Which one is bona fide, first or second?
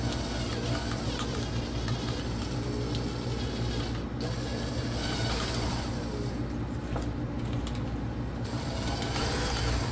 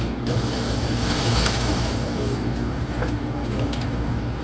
first